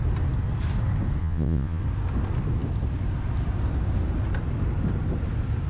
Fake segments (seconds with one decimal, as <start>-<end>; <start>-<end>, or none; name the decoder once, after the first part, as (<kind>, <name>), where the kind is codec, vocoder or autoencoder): 1.2-1.8 (vocoder, Vocos)